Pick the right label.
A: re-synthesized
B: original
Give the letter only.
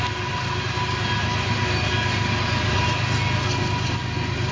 B